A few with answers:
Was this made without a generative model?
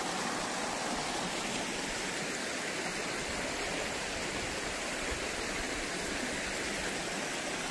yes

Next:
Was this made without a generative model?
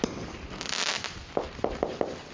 yes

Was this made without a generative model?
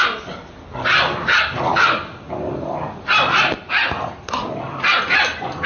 yes